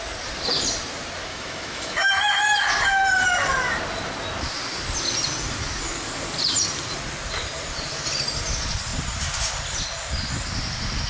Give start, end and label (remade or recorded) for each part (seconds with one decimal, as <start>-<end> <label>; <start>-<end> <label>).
0.0-1.3 recorded; 1.3-2.2 remade; 2.2-11.1 recorded